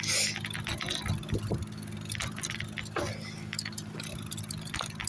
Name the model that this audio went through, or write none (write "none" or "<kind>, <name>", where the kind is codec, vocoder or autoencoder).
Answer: none